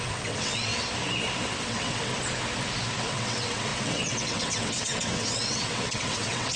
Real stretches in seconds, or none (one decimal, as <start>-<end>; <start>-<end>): 0.7-1.6; 2.1-3.0